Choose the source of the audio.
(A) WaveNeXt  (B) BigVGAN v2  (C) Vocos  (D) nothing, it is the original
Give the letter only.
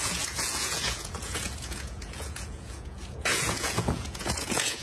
C